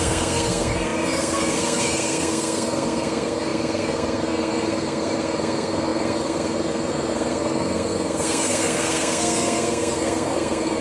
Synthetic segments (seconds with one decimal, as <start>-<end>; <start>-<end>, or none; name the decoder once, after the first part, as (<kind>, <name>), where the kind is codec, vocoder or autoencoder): 0.0-10.8 (codec, SNAC)